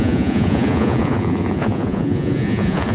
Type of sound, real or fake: fake